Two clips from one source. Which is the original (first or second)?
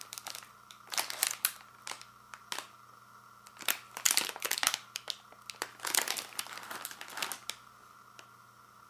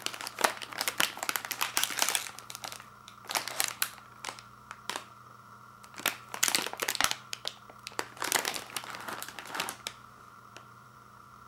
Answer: first